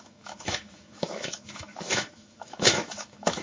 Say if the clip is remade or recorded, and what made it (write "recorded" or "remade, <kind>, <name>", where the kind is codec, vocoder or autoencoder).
remade, autoencoder, DAC-VAE